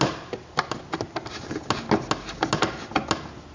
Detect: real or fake real